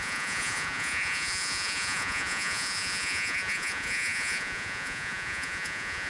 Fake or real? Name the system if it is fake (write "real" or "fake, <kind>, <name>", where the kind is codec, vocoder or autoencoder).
fake, vocoder, Vocos